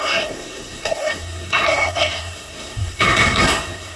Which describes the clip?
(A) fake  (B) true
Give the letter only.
A